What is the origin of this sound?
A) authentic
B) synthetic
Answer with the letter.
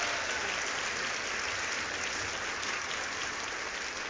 A